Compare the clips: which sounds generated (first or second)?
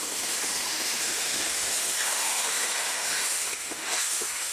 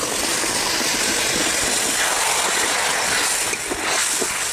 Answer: first